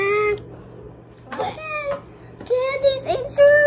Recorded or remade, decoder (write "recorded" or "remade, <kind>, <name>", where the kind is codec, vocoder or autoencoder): recorded